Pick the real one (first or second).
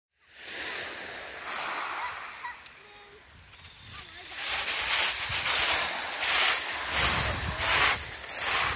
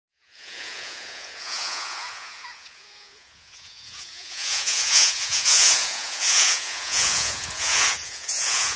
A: first